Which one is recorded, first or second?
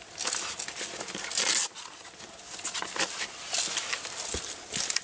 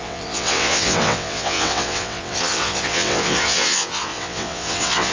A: first